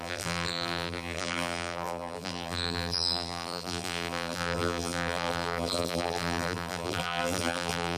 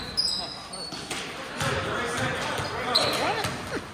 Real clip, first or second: second